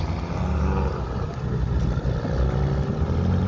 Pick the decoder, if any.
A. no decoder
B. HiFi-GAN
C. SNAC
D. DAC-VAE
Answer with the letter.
A